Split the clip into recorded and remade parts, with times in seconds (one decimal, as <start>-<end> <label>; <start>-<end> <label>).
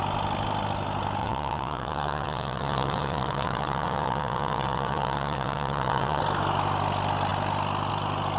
0.0-1.2 recorded; 1.2-6.2 remade; 6.2-8.4 recorded